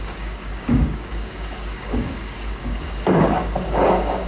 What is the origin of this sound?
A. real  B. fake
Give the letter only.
B